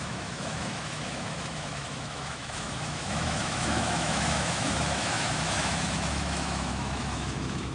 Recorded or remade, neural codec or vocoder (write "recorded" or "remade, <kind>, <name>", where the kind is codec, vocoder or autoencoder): remade, autoencoder, DAC-VAE